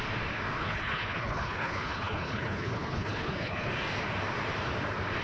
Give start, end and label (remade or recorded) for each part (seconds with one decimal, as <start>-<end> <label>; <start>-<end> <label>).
0.0-0.6 recorded; 0.6-3.7 remade; 3.7-5.2 recorded